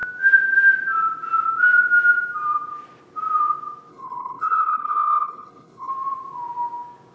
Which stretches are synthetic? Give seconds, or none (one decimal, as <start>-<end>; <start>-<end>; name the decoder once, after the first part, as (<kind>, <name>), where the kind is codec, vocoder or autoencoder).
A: 3.9-5.9 (codec, HILCodec)